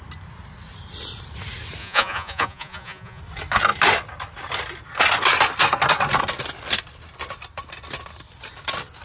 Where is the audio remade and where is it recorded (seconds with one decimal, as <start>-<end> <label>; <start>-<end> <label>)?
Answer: 0.0-1.8 recorded; 1.8-3.2 remade; 3.2-9.0 recorded